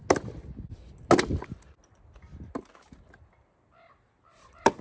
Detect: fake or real real